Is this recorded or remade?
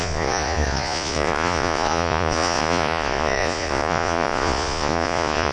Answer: remade